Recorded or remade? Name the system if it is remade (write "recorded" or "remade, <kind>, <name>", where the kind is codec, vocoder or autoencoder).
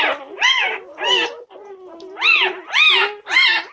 recorded